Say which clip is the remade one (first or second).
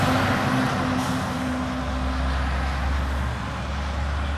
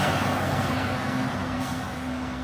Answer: second